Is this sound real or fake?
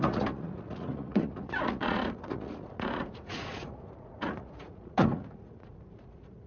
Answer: fake